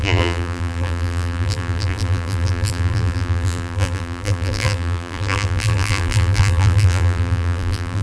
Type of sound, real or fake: fake